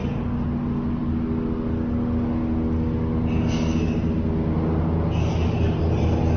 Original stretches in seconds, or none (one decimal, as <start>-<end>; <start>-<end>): 0.0-6.4

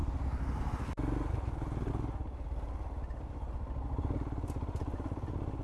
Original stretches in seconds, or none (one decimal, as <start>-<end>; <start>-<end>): 0.0-5.6

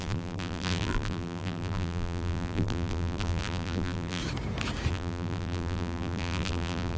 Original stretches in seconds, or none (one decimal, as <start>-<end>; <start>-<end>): 4.2-4.9

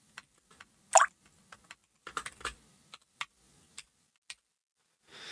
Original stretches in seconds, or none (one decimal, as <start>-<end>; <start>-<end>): 0.0-5.3

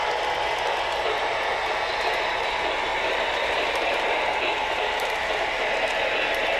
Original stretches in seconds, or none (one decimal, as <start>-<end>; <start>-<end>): 0.0-2.9; 5.4-6.6